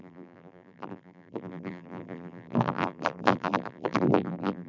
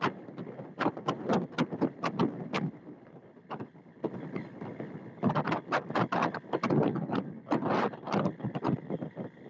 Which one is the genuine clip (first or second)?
second